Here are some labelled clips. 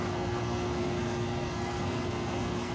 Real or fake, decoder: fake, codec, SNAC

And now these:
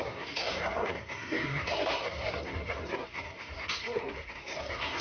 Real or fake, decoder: fake, codec, SNAC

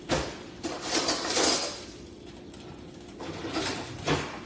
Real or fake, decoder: real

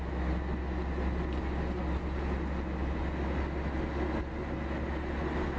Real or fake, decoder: real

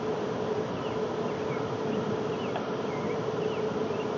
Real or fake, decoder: real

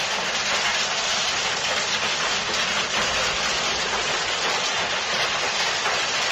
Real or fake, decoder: real